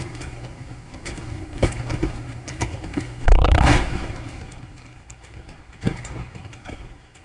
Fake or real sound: fake